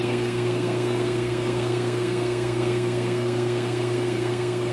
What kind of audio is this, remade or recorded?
remade